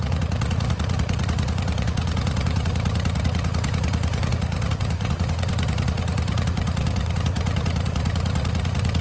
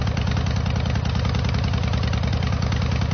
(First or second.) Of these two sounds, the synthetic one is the first